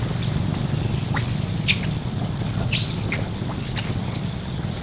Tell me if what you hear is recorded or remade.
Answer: recorded